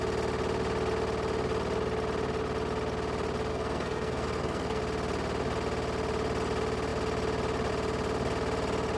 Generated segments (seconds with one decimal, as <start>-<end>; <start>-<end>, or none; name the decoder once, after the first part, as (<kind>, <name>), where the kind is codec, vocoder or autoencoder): 3.5-4.8 (codec, SNAC)